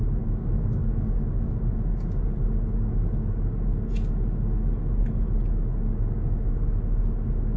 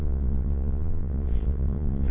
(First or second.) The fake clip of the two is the second